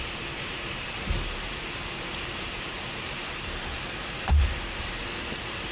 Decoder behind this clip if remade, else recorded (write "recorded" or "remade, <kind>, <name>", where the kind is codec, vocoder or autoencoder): remade, vocoder, BigVGAN v2